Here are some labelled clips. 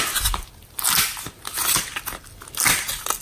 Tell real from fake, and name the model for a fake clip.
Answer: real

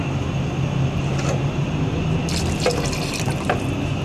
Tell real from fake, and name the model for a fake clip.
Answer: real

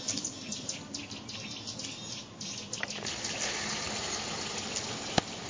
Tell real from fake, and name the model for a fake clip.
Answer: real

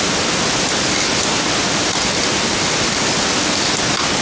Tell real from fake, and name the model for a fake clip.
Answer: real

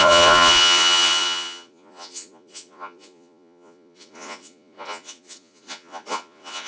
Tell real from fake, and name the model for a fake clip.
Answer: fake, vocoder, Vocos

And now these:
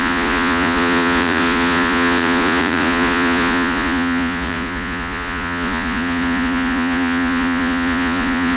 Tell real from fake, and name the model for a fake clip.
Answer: fake, vocoder, Vocos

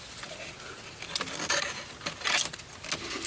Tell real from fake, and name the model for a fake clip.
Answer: real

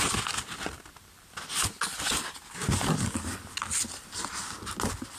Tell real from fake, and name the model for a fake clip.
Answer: real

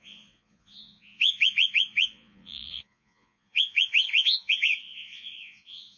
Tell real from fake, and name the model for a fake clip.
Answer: fake, vocoder, Vocos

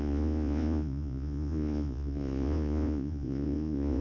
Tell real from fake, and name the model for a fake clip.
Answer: fake, vocoder, Vocos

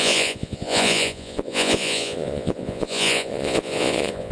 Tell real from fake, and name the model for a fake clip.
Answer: fake, vocoder, Vocos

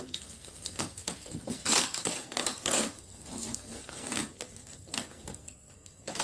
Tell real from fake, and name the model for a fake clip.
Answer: fake, codec, SNAC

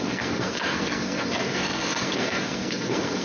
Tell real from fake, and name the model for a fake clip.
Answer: fake, codec, SNAC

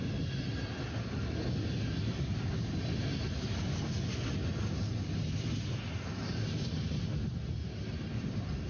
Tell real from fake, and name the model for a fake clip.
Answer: real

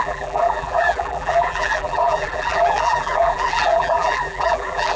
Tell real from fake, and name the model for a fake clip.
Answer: fake, vocoder, BigVGAN v2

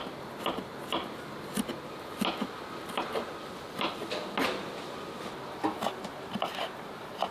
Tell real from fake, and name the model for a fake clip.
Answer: real